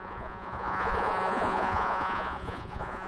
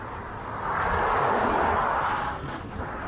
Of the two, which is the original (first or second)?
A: second